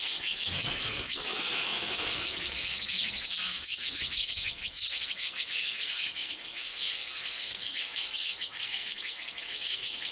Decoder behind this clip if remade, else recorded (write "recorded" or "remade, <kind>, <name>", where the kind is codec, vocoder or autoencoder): remade, codec, SNAC